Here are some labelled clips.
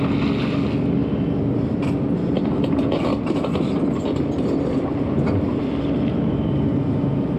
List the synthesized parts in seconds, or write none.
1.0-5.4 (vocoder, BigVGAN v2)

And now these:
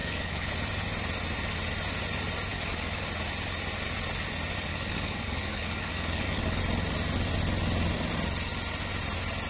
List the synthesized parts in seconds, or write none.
0.0-0.5 (codec, DAC); 2.5-3.1; 4.7-6.6

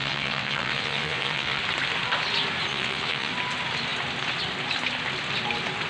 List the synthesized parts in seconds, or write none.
0.0-1.6 (vocoder, WaveNeXt); 2.7-3.3

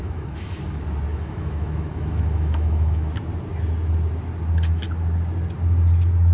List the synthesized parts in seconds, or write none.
0.0-0.6 (autoencoder, DAC-VAE); 1.1-3.1

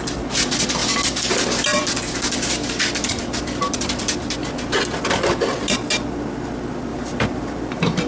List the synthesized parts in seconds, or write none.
6.9-8.1 (vocoder, BigVGAN v2)

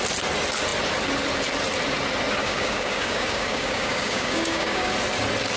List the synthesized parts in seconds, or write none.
2.4-4.9 (codec, DAC)

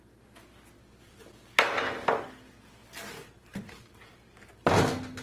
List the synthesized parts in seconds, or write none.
0.8-1.7 (vocoder, BigVGAN v2); 3.2-4.5